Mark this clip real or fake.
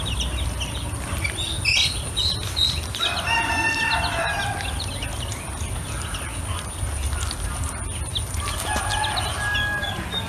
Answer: real